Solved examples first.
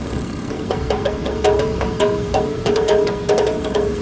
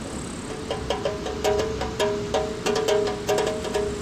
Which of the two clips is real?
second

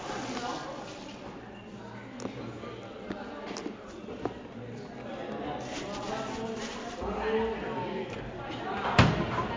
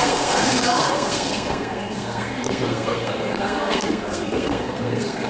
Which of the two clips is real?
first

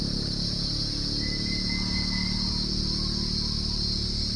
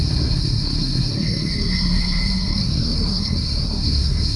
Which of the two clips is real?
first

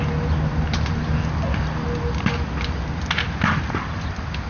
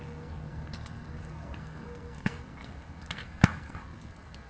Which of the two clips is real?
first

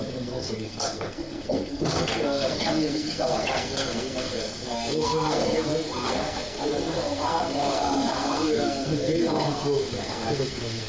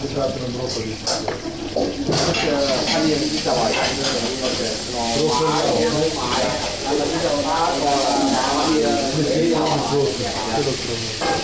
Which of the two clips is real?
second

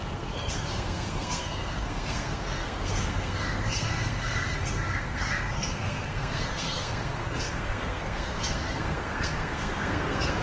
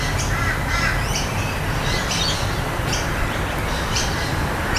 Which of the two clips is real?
second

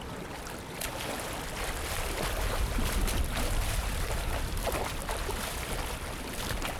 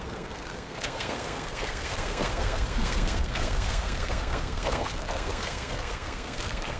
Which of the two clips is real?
first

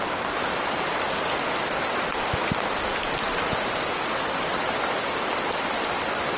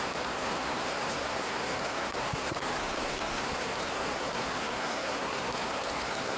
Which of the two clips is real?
first